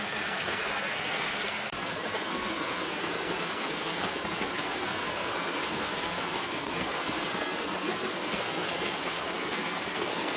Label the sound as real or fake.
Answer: fake